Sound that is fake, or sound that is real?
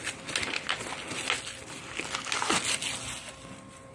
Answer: real